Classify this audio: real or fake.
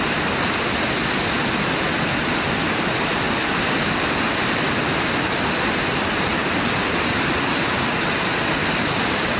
real